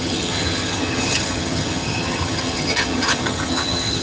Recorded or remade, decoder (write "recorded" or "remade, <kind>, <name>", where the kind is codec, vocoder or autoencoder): remade, vocoder, HiFi-GAN